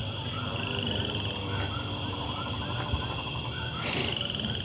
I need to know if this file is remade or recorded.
recorded